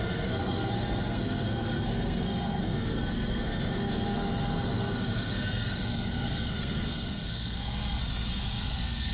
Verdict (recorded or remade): remade